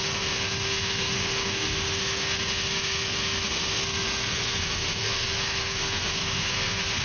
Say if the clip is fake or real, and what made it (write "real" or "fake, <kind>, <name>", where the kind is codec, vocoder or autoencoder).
fake, codec, SNAC